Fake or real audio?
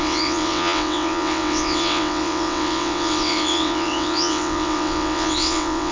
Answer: fake